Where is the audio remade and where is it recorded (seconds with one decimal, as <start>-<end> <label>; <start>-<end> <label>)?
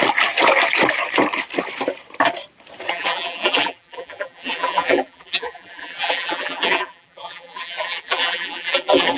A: 0.0-2.9 recorded; 2.9-9.2 remade